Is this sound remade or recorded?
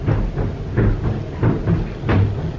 recorded